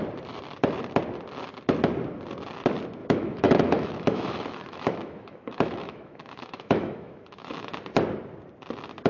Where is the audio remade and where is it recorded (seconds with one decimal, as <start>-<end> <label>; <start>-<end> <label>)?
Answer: 0.0-3.0 recorded; 3.0-7.7 remade; 7.7-9.1 recorded